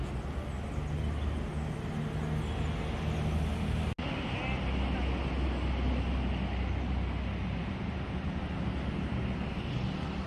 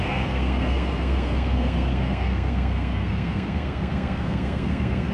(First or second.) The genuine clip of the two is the first